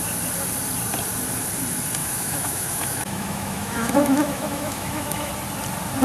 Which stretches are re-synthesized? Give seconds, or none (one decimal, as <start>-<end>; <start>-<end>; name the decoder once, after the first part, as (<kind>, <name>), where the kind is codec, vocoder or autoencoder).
2.0-5.3 (autoencoder, DAC-VAE)